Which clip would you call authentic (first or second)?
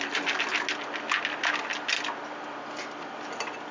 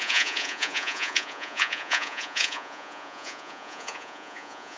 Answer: first